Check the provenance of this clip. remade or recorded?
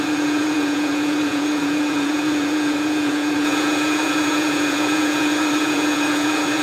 remade